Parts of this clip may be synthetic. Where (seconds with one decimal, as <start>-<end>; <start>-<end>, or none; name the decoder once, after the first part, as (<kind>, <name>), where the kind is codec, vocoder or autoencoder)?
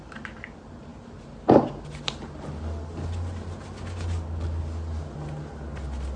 none